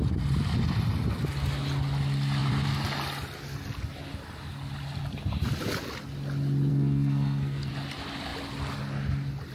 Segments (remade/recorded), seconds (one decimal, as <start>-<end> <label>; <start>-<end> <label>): 0.0-6.7 recorded; 6.7-7.7 remade; 7.7-9.5 recorded